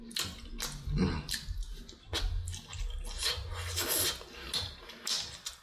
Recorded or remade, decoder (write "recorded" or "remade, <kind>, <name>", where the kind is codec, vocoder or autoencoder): recorded